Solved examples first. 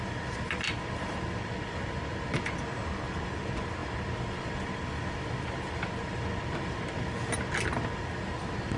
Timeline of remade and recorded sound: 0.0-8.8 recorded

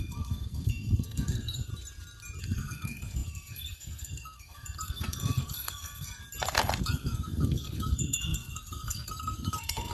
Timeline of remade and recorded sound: 0.0-1.7 remade; 1.7-2.4 recorded; 2.4-6.2 remade; 6.2-6.8 recorded; 6.8-9.9 remade

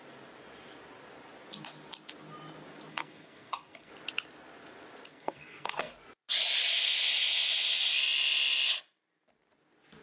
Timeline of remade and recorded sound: 0.0-2.9 recorded; 2.9-3.9 remade; 3.9-5.1 recorded; 5.1-5.9 remade; 5.9-10.0 recorded

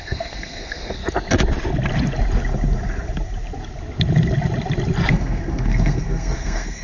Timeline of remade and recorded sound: 0.0-1.0 remade; 1.0-5.1 recorded; 5.1-6.8 remade

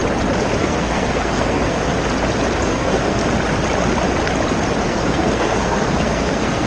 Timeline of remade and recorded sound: 0.0-0.6 recorded; 0.6-1.9 remade; 1.9-2.7 recorded; 2.7-3.2 remade; 3.2-4.8 recorded; 4.8-6.7 remade